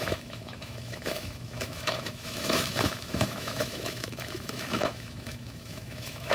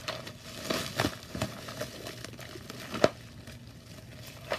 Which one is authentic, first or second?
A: second